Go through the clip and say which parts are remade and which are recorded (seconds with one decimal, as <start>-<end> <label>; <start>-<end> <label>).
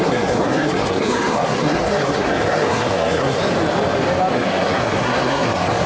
0.0-3.4 remade; 3.4-4.3 recorded; 4.3-5.9 remade